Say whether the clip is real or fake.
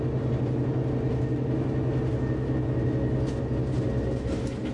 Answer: real